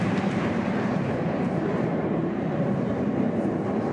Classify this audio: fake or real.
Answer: fake